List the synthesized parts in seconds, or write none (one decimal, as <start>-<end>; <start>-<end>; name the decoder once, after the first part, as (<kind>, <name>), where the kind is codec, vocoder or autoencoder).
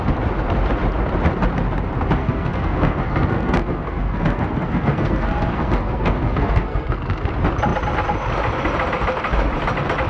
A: 2.2-7.3 (codec, SNAC)